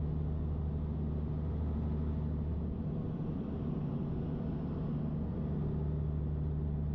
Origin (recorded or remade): recorded